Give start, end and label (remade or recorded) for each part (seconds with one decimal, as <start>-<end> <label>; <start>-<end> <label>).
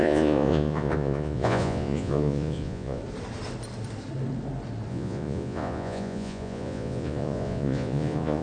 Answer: 0.0-3.0 remade; 3.0-4.9 recorded; 4.9-8.4 remade